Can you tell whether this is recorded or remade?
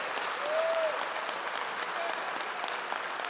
recorded